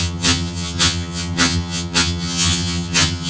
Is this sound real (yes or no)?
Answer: no